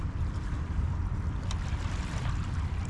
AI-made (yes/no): no